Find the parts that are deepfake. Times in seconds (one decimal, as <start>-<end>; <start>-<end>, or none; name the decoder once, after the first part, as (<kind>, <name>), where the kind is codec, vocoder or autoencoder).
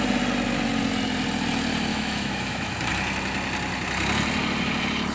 1.9-2.9 (autoencoder, DAC-VAE)